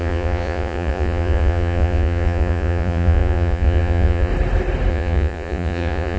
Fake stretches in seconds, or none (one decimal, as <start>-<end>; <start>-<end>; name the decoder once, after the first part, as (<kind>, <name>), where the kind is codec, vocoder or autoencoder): 0.0-4.3 (vocoder, Vocos); 4.9-6.2